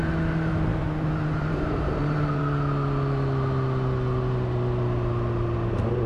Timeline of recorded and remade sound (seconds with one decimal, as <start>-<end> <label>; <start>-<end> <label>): 0.0-0.7 recorded; 0.7-2.4 remade; 2.4-6.1 recorded